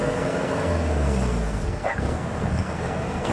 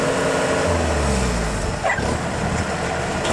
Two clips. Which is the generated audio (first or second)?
first